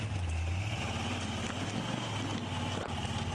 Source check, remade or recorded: recorded